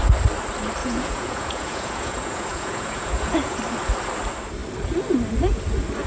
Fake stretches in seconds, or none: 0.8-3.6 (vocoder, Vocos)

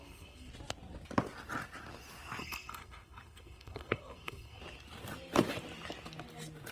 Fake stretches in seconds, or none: 0.0-0.5 (codec, SNAC); 2.4-4.6

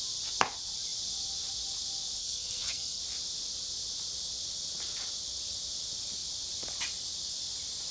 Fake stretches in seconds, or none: 2.2-3.0 (codec, SNAC)